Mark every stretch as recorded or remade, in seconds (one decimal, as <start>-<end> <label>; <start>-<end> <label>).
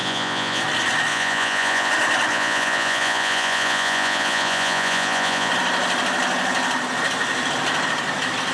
0.0-0.6 remade; 0.6-1.1 recorded; 1.1-1.9 remade; 1.9-2.3 recorded; 2.3-5.5 remade; 5.5-8.5 recorded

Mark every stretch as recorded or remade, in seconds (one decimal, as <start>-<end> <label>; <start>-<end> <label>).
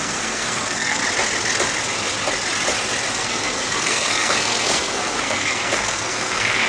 0.0-1.0 remade; 1.0-3.1 recorded; 3.1-6.7 remade